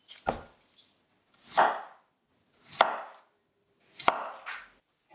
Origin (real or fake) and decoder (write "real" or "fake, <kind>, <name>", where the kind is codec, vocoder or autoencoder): real